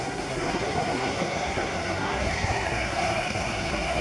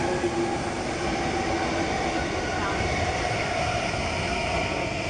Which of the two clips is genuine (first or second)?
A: second